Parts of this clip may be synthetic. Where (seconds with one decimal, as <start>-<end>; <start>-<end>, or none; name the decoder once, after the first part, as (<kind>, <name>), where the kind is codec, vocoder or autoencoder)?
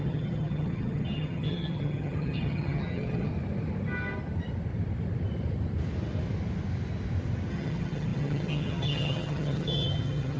0.0-3.3 (vocoder, HiFi-GAN); 7.5-10.4